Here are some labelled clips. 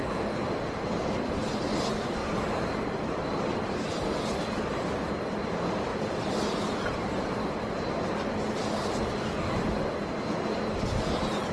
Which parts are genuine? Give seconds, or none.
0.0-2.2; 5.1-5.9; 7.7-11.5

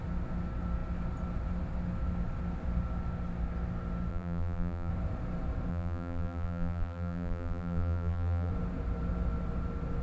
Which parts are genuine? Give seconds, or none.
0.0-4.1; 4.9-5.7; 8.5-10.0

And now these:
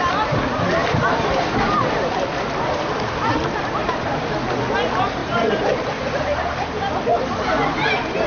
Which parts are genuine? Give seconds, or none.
0.0-0.8; 1.8-3.3; 4.1-5.2; 5.9-7.1; 7.7-8.3

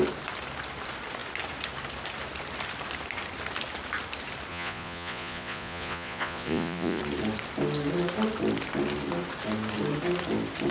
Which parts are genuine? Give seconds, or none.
0.0-4.5; 7.0-10.7

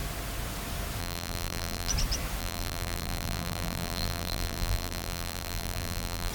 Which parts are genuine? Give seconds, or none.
0.0-1.0; 1.9-2.4